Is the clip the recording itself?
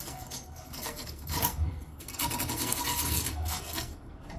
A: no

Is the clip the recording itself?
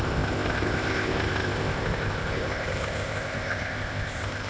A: no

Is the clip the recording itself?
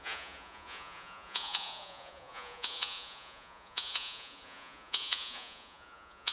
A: no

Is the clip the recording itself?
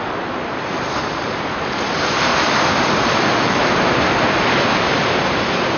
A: no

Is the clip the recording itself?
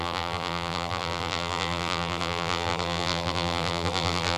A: no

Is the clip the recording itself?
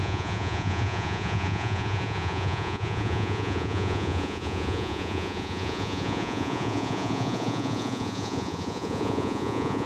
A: no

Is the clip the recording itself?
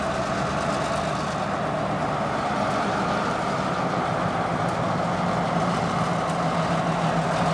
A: yes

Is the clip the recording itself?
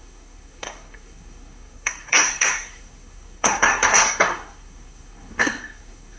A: no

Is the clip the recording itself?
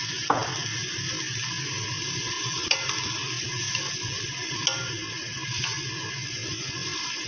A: yes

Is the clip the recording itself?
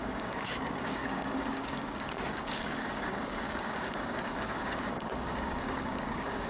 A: no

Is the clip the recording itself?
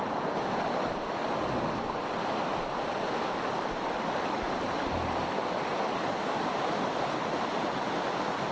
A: yes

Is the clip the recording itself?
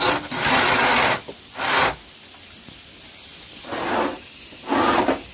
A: yes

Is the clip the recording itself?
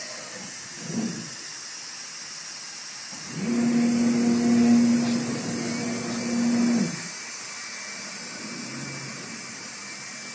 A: yes